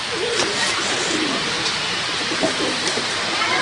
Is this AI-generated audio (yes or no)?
yes